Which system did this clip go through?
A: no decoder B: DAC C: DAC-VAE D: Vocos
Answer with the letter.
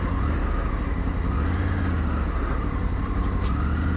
A